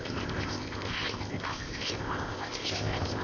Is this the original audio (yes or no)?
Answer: no